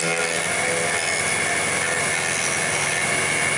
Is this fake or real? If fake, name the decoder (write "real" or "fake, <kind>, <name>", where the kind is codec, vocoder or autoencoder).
real